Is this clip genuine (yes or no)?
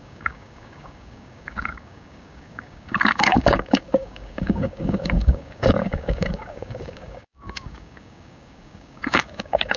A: no